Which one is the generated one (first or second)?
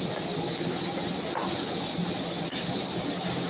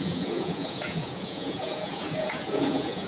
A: second